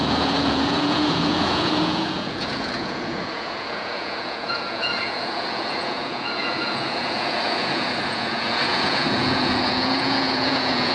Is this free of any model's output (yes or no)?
no